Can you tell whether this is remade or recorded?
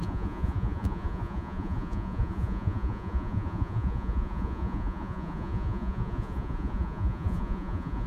remade